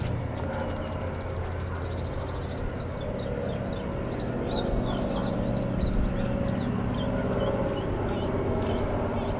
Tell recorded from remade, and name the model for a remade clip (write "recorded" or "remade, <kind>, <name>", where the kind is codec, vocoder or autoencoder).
recorded